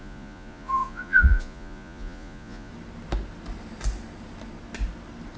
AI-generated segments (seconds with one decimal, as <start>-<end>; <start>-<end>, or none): 0.0-2.7